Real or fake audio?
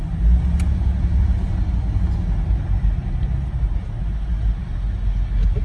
real